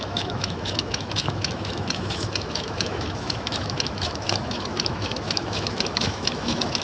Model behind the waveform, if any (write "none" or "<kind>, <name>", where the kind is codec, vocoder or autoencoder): autoencoder, DAC-VAE